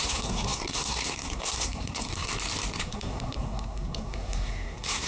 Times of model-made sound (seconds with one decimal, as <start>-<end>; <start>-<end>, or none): 0.0-2.3; 2.8-5.1